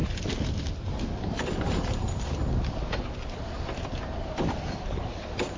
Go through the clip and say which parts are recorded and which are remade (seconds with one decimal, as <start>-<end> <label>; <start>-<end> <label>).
0.0-5.6 recorded